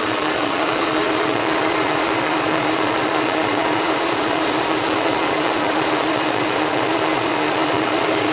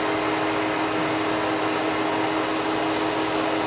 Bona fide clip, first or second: second